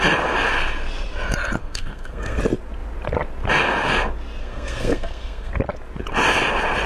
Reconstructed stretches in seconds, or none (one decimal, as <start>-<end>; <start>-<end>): 1.6-2.4; 4.4-5.5